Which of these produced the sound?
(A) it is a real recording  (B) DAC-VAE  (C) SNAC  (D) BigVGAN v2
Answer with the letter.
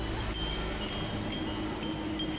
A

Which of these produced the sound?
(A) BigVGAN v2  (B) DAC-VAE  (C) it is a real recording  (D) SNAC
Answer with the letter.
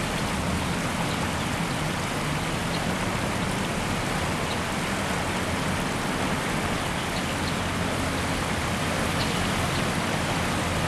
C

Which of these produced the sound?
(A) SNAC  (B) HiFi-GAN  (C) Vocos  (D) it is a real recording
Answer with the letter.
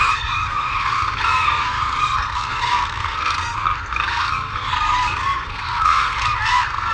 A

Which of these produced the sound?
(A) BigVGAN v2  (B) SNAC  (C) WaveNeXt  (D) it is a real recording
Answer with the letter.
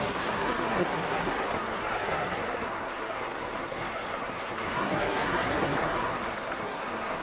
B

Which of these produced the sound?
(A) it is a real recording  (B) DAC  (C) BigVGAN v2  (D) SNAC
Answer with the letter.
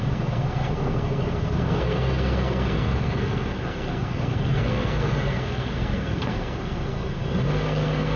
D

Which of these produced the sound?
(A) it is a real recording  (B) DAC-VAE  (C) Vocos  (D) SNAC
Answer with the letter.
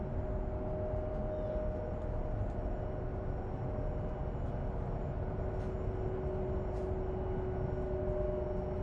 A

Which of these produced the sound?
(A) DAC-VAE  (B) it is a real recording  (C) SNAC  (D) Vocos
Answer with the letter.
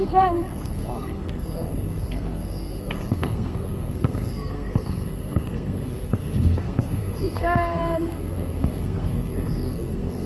C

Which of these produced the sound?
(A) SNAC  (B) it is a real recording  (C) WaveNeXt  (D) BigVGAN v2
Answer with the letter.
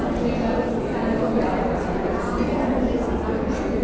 B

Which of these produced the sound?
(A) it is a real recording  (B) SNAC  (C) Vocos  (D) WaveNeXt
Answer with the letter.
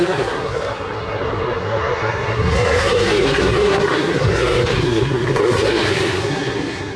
B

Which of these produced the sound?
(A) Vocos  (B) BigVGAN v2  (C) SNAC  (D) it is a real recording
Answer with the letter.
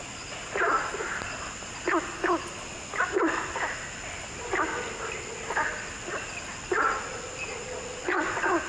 D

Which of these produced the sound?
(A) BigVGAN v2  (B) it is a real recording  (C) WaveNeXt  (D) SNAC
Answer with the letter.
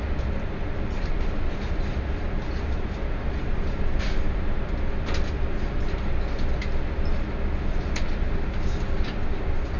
B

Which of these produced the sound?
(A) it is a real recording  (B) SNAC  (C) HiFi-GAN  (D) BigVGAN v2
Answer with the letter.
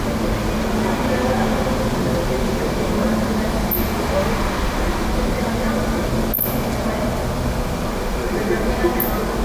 A